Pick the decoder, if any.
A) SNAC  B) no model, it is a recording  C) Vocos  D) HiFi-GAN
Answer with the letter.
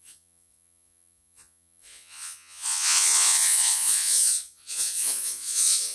C